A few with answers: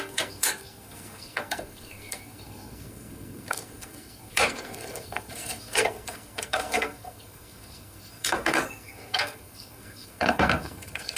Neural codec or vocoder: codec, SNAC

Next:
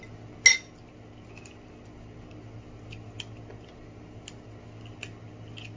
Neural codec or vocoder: none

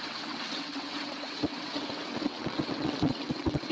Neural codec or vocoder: vocoder, WaveNeXt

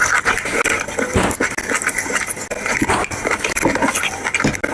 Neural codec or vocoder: none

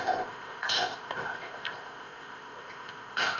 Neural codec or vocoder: codec, ZipCodec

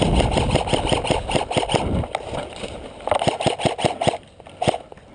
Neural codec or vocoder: none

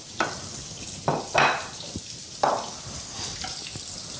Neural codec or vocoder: none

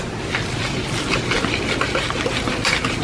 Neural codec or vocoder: none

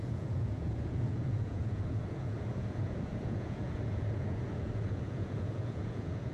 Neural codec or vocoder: vocoder, Vocos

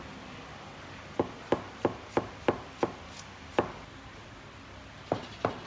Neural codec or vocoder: none